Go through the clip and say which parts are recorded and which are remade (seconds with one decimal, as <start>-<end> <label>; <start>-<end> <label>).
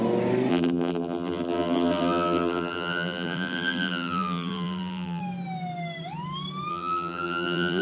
0.0-0.5 recorded; 0.5-5.2 remade; 5.2-6.7 recorded; 6.7-7.8 remade